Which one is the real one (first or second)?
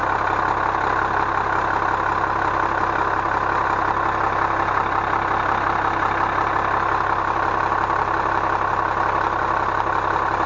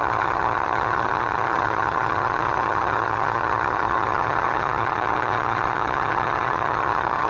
first